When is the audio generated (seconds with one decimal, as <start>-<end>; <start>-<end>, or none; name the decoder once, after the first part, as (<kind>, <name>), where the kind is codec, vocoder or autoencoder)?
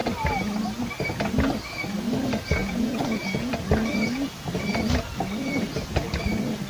2.6-3.5 (vocoder, Vocos)